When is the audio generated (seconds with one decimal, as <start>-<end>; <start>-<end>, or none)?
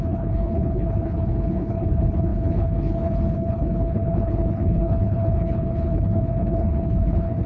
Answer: 0.0-7.5